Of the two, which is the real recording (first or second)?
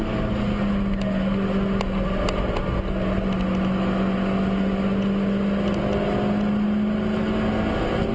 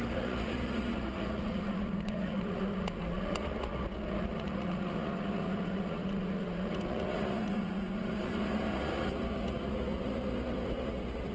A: first